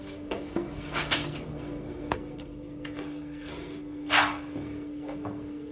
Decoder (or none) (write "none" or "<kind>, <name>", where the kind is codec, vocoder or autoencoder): codec, SNAC